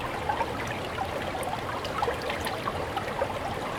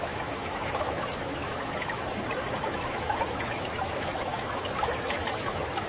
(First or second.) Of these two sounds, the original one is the first